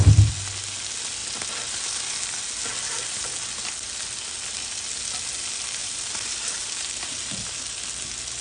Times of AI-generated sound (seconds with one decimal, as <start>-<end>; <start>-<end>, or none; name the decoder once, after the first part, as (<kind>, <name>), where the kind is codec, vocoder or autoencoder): 5.8-7.6 (vocoder, BigVGAN v2)